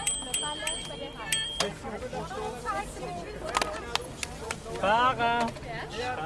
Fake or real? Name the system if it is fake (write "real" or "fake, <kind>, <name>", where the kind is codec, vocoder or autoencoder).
real